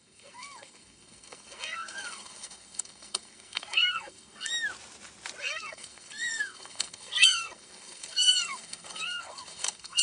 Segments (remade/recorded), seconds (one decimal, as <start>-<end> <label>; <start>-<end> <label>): 0.0-4.5 remade; 4.5-5.4 recorded; 5.4-10.0 remade